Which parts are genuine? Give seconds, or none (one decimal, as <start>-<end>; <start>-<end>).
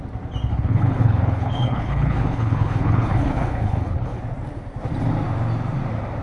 0.0-0.5; 4.2-6.2